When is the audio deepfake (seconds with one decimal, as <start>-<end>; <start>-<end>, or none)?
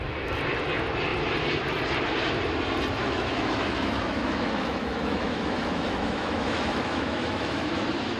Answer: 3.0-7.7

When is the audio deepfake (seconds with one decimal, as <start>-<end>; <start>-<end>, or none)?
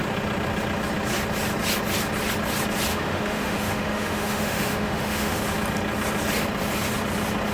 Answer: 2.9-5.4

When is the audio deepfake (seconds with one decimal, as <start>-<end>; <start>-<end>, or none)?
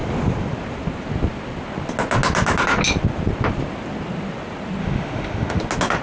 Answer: 4.8-5.6